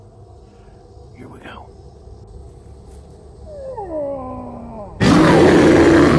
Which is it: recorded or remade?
recorded